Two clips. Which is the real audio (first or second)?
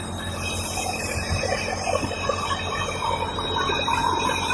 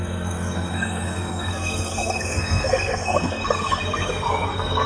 first